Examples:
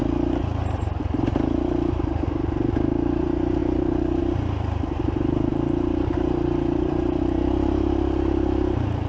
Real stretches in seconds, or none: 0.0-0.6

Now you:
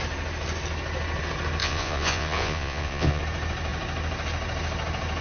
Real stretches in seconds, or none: 0.0-1.6; 3.2-5.2